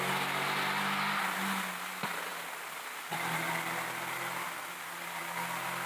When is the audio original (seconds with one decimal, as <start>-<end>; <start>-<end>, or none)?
0.0-5.9